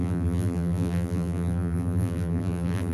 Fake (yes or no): yes